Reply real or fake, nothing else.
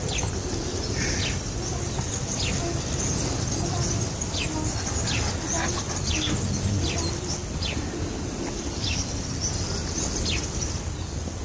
real